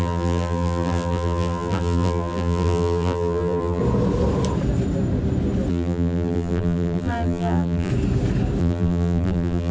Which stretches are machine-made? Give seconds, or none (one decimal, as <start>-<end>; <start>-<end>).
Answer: 0.0-3.8; 5.7-7.9; 8.6-9.7